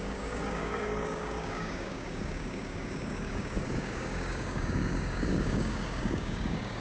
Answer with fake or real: fake